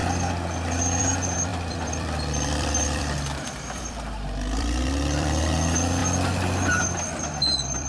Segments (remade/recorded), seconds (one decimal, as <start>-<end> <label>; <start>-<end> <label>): 0.0-1.0 recorded; 1.0-6.0 remade; 6.0-6.7 recorded; 6.7-7.9 remade